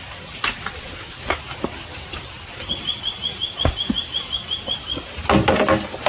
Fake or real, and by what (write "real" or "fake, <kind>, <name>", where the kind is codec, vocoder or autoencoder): real